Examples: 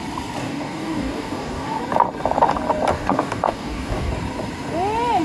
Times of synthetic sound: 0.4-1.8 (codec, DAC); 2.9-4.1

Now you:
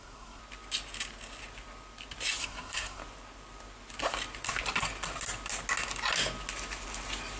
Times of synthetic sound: 0.0-0.4 (codec, SNAC); 2.4-3.0

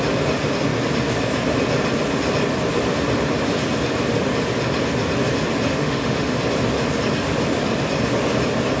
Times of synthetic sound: 5.7-6.4 (autoencoder, DAC-VAE)

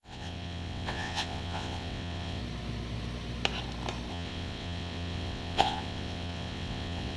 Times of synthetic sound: 0.0-2.4 (vocoder, WaveNeXt); 4.1-7.2

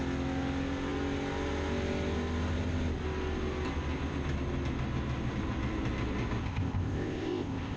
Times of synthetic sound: 6.4-7.8 (codec, ZipCodec)